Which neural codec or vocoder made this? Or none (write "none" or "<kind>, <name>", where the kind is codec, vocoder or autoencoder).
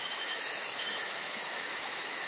autoencoder, DAC-VAE